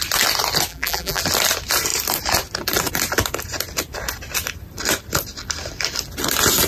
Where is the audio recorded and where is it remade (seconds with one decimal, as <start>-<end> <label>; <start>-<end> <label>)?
0.0-0.7 recorded; 0.7-1.2 remade; 1.2-6.7 recorded